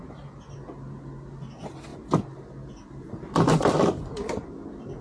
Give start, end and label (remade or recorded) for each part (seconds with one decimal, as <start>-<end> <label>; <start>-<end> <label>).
0.0-5.0 recorded